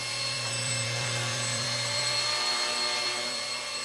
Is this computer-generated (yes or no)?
yes